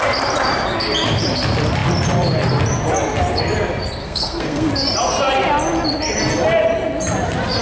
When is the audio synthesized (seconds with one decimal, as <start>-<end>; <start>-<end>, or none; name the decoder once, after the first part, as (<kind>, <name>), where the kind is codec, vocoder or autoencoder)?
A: 4.0-4.7 (codec, SNAC)